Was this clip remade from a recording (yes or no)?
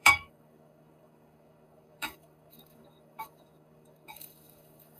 yes